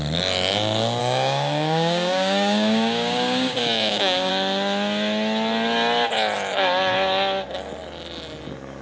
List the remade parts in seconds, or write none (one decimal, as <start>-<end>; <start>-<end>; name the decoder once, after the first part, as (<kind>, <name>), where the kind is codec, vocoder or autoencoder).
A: 1.0-4.3 (codec, DAC)